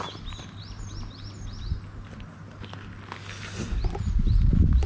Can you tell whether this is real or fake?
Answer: real